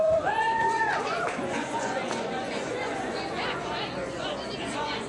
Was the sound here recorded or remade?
remade